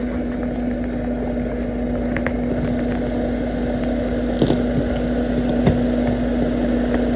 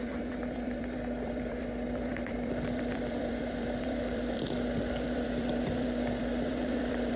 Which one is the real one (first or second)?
first